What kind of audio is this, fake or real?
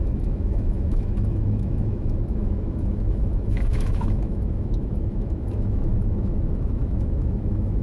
fake